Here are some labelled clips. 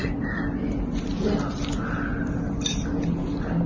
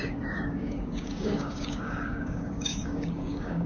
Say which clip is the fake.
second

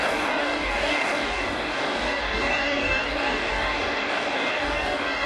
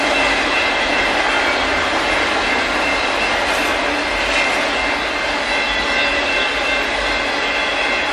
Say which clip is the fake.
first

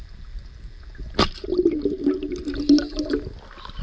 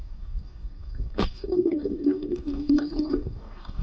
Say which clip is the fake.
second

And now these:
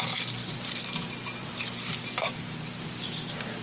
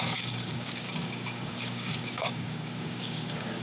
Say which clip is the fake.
second